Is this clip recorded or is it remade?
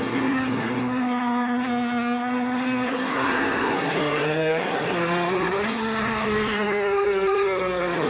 remade